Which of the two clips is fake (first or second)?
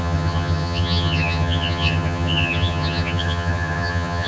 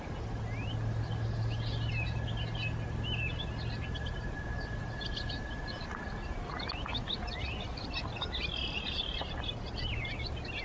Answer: first